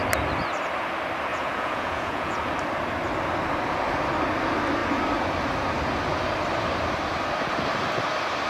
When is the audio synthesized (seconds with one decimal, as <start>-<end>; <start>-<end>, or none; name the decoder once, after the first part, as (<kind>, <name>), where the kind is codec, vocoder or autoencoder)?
1.3-2.4 (vocoder, Vocos)